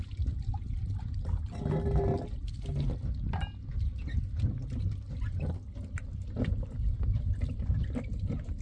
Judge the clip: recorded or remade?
recorded